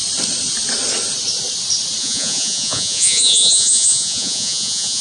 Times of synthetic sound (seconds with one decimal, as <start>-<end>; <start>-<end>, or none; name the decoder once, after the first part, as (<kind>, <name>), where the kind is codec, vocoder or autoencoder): 2.0-5.0 (vocoder, Vocos)